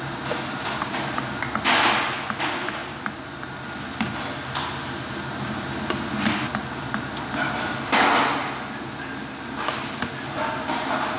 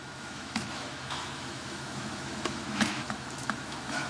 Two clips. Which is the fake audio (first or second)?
second